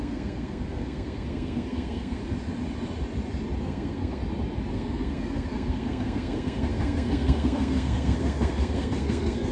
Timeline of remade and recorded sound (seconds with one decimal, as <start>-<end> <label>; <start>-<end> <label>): 0.0-2.2 remade; 2.2-3.6 recorded; 3.6-4.2 remade; 4.2-4.7 recorded; 4.7-9.5 remade